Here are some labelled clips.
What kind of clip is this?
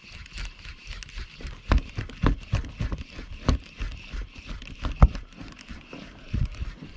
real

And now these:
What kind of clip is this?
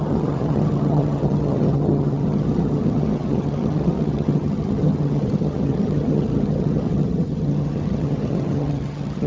fake